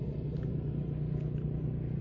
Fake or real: real